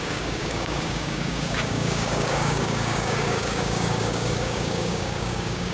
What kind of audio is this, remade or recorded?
remade